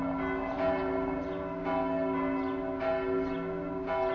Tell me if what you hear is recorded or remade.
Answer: recorded